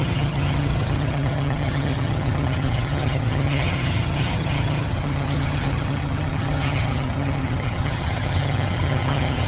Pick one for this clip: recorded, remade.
remade